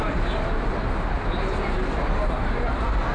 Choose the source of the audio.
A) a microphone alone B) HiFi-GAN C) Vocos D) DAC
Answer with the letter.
A